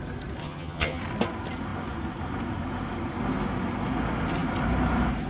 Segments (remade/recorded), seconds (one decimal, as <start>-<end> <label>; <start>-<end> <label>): 0.0-0.4 recorded; 0.4-1.0 remade; 1.0-5.3 recorded